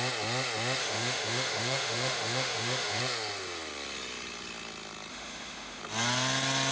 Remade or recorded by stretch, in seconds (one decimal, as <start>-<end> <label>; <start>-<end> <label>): 0.0-0.8 recorded; 0.8-3.0 remade; 3.0-5.1 recorded; 5.1-5.8 remade; 5.8-6.7 recorded